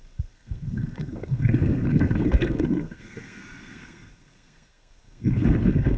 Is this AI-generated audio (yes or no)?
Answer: yes